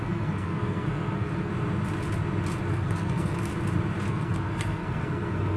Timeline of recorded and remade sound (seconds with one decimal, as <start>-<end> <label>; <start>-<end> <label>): 0.0-1.5 remade; 1.5-2.7 recorded; 2.7-3.5 remade; 3.5-4.1 recorded; 4.1-5.6 remade